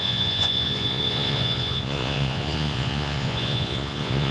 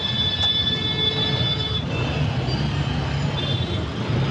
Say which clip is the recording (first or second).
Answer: second